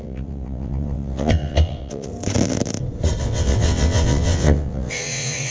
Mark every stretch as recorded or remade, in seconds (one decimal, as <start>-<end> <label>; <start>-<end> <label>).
0.0-2.1 remade; 2.1-3.2 recorded; 3.2-5.5 remade